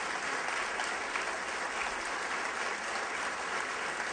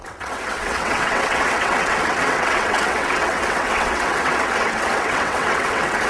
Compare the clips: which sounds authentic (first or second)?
first